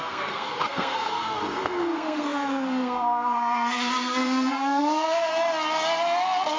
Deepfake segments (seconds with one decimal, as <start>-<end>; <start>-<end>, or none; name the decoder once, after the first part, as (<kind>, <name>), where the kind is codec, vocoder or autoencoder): 0.0-5.3 (codec, SNAC)